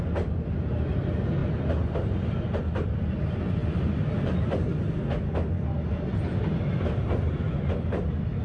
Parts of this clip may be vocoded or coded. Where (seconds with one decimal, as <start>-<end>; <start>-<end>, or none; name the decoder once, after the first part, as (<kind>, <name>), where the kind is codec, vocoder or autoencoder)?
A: none

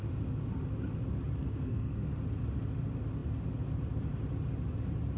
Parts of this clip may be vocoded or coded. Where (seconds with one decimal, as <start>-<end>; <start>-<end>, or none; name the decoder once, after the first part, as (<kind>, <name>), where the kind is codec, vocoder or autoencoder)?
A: 1.4-2.1 (codec, SNAC)

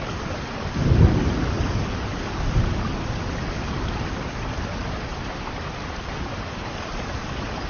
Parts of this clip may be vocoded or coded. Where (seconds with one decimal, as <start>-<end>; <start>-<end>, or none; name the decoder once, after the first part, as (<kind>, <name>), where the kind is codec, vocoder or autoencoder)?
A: none

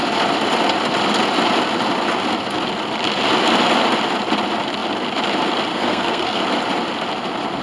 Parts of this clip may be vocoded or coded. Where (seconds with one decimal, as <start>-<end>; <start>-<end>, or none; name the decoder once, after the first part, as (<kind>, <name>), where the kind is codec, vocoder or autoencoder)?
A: 5.7-6.4 (codec, SNAC)

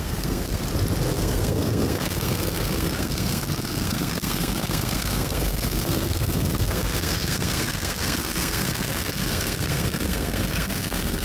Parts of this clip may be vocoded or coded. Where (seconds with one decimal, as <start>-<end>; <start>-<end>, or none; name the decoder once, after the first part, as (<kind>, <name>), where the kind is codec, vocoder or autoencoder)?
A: 0.0-0.6 (codec, SNAC); 1.1-11.2

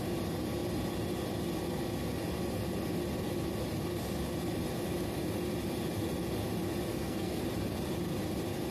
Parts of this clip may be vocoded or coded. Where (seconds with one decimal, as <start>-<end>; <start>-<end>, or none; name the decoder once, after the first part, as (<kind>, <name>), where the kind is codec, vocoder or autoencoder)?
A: 6.9-7.4 (codec, SNAC)

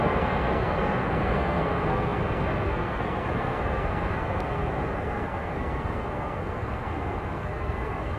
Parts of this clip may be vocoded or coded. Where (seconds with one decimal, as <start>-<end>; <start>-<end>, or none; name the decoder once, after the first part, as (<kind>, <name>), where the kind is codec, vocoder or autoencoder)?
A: 0.0-8.2 (codec, SNAC)